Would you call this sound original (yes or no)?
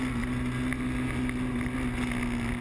yes